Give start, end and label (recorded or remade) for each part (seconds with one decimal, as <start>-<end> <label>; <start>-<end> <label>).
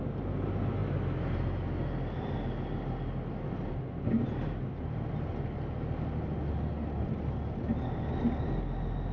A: 0.0-9.1 recorded